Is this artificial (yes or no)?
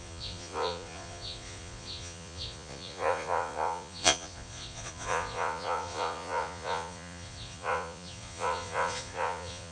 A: yes